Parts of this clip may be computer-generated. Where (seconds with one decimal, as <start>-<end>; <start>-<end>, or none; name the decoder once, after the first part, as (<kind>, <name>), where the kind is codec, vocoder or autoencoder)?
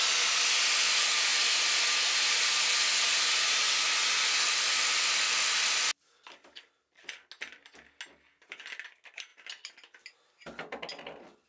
none